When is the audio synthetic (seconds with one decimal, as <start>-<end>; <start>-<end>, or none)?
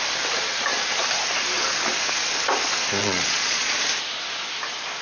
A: 3.0-3.8